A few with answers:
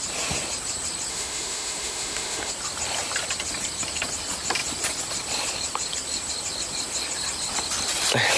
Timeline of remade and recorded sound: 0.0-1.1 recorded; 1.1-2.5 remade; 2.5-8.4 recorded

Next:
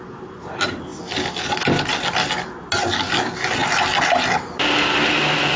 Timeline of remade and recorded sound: 0.0-5.6 recorded

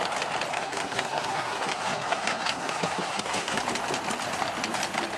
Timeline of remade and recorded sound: 0.0-0.5 recorded; 0.5-3.6 remade; 3.6-5.2 recorded

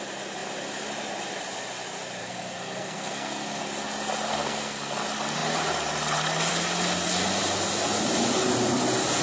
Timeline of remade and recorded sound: 0.0-2.2 recorded; 2.2-3.6 remade; 3.6-4.3 recorded; 4.3-5.0 remade; 5.0-9.2 recorded